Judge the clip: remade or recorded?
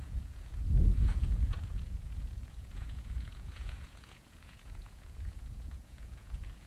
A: remade